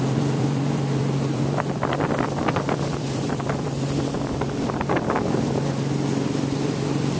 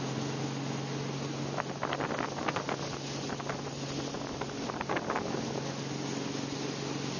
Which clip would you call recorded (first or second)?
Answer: second